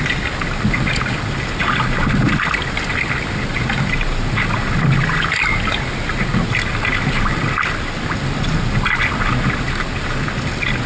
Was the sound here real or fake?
real